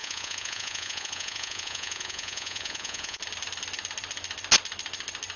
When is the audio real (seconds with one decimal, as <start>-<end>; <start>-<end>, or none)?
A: 3.2-5.4